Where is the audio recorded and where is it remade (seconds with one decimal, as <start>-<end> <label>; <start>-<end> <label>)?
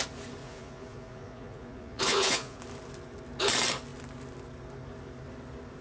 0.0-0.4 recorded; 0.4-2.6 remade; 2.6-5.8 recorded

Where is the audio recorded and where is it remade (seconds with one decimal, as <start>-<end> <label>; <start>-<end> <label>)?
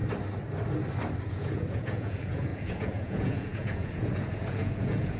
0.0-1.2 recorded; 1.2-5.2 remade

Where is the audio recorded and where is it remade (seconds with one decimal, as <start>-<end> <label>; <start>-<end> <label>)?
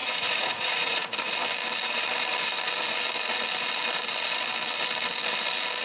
0.0-1.3 remade; 1.3-5.8 recorded